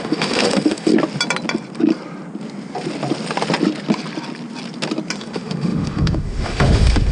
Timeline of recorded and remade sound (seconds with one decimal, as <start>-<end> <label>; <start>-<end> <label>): 0.0-0.9 remade; 0.9-5.2 recorded; 5.2-7.1 remade